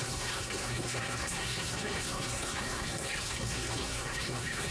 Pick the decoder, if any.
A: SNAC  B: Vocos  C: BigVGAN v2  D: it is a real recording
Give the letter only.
A